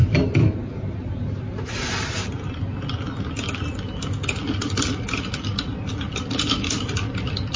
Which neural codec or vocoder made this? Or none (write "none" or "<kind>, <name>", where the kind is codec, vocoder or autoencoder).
none